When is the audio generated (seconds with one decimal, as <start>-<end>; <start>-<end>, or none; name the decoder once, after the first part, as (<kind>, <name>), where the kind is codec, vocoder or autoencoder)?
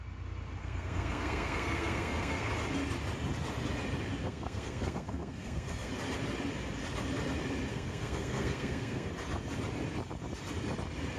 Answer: 0.6-2.5 (codec, SNAC); 4.2-5.9; 7.7-9.1